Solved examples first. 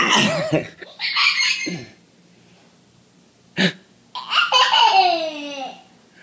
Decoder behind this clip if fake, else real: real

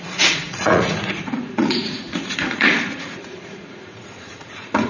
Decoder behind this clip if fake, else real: fake, vocoder, Vocos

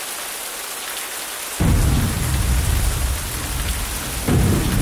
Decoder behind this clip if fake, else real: real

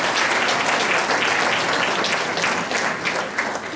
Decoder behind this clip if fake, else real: real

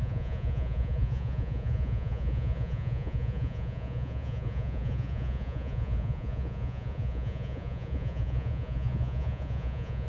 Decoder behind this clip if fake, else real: fake, vocoder, Vocos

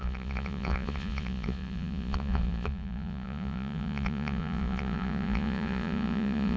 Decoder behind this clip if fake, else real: fake, vocoder, Vocos